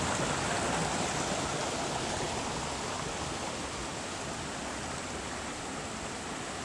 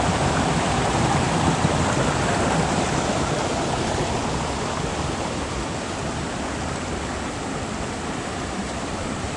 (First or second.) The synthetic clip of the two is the second